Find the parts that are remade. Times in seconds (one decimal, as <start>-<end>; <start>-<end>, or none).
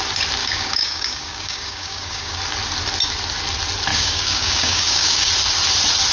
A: 0.4-2.4; 3.9-5.3